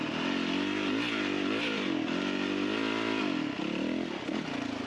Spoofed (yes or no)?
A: no